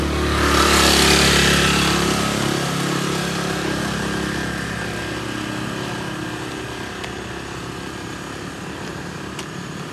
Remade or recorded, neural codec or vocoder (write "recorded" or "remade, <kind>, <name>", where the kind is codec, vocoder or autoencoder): recorded